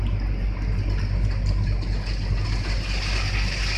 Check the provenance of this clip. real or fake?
real